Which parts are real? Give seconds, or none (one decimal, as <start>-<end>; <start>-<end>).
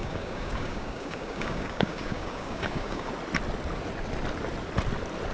3.1-5.3